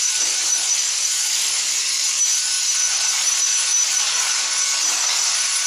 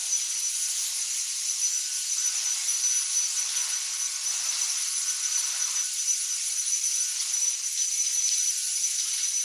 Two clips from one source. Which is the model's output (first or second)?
first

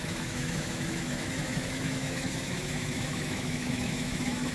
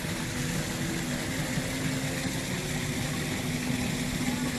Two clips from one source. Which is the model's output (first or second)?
first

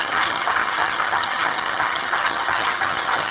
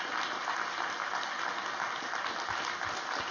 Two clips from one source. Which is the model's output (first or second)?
first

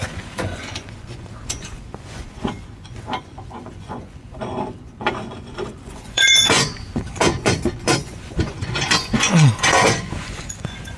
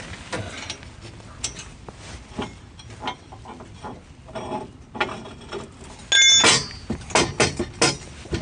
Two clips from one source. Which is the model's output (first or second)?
first